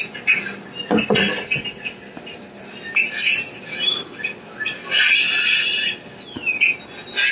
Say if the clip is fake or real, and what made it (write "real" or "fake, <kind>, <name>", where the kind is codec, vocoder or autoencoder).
real